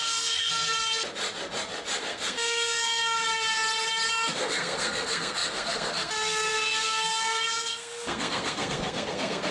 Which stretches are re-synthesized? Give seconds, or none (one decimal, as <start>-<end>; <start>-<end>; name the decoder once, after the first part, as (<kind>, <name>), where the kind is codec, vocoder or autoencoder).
0.0-0.5 (codec, SNAC); 2.0-3.0; 4.1-9.5